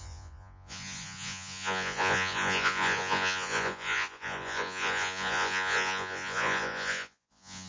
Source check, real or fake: fake